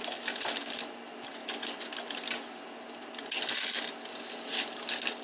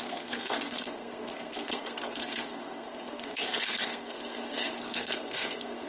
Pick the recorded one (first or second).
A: first